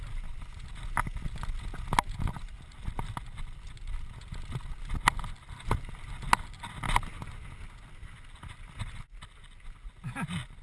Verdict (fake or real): real